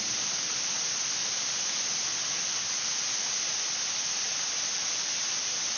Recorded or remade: recorded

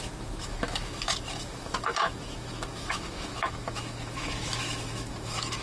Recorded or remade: remade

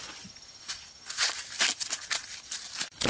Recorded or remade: recorded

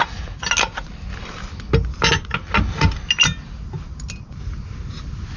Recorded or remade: recorded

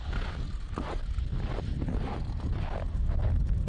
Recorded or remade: recorded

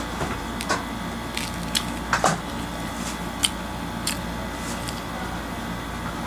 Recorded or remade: recorded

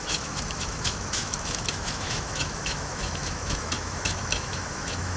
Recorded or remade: remade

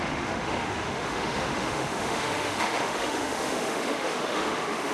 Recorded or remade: remade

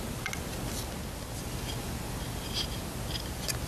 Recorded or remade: recorded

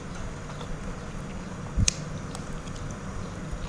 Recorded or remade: recorded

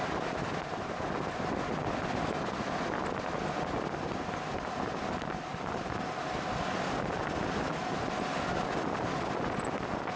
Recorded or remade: recorded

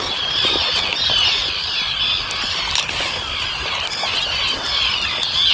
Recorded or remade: recorded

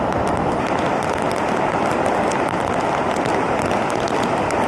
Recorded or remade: recorded